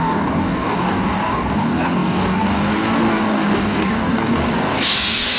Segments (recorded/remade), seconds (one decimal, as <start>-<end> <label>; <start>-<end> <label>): 0.0-5.4 remade

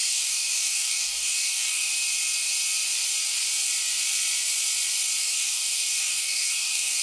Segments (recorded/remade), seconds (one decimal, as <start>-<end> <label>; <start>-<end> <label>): 0.0-1.9 remade; 1.9-5.2 recorded; 5.2-7.0 remade

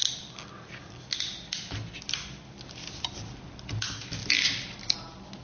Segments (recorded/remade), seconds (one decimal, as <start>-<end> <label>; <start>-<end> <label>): 0.0-5.4 recorded

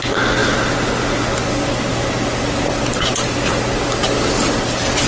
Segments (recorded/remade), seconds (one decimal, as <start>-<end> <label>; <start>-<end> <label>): 0.0-5.1 recorded